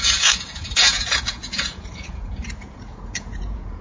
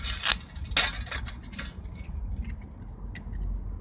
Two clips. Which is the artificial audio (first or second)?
first